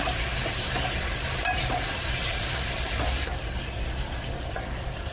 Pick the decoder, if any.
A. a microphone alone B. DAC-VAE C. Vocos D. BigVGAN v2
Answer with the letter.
A